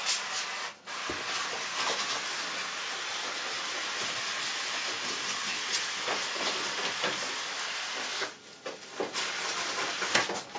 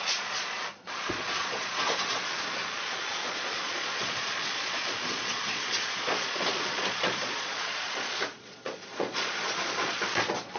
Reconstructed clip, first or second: second